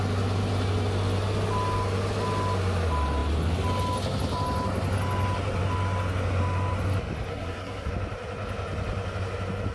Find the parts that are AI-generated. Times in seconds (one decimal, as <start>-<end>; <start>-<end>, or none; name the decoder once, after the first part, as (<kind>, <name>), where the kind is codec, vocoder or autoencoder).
7.3-7.9 (codec, SNAC)